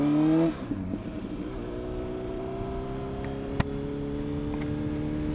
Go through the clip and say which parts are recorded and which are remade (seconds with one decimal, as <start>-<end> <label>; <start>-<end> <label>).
0.0-1.0 recorded; 1.0-2.4 remade; 2.4-5.3 recorded